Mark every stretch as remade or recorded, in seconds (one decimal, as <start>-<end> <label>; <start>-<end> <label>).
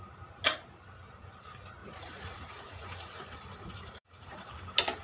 0.0-1.8 recorded; 1.8-4.5 remade; 4.5-5.0 recorded